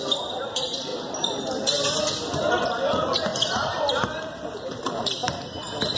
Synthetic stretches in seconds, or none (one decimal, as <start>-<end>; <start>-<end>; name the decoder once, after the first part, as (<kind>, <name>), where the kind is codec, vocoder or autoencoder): 0.0-0.9 (vocoder, BigVGAN v2); 2.5-5.2